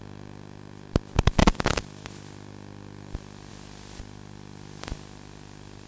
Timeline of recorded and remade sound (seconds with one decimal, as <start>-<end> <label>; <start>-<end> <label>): 0.0-5.9 recorded